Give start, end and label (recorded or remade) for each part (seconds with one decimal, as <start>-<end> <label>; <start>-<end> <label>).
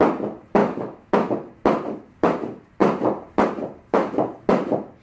0.0-0.6 recorded; 0.6-1.3 remade; 1.3-5.0 recorded